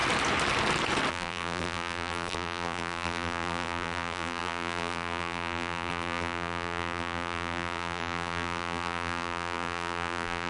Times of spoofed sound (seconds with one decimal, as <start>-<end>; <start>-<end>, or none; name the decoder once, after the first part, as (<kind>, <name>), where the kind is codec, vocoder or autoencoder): 1.1-10.5 (vocoder, BigVGAN v2)